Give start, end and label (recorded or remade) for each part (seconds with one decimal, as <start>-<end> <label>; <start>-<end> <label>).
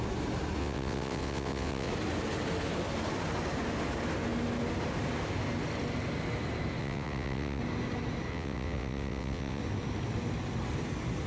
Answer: 0.0-0.6 recorded; 0.6-1.9 remade; 1.9-6.8 recorded; 6.8-7.6 remade; 7.6-8.3 recorded; 8.3-9.6 remade; 9.6-11.3 recorded